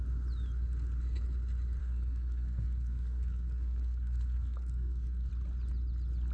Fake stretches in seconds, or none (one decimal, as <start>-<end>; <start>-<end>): 1.8-5.3